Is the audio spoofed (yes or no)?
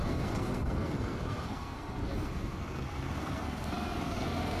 yes